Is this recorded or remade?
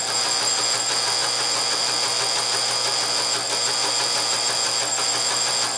recorded